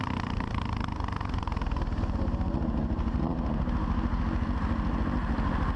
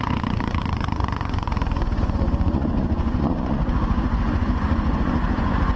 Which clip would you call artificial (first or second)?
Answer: second